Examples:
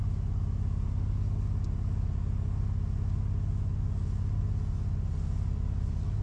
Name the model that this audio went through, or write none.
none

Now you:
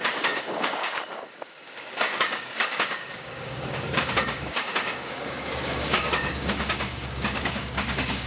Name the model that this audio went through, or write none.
codec, DAC